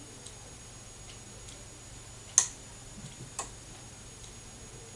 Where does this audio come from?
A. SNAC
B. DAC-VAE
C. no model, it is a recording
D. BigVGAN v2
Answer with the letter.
C